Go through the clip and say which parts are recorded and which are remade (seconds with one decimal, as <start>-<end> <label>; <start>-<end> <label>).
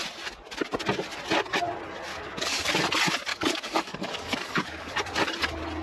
0.0-2.1 recorded; 2.1-2.7 remade; 2.7-3.3 recorded; 3.3-4.9 remade; 4.9-5.8 recorded